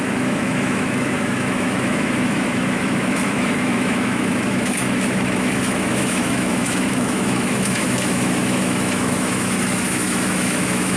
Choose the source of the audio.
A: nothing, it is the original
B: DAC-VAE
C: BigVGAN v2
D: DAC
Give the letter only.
B